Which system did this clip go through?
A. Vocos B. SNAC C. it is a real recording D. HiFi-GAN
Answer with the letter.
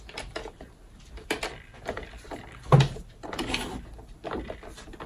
C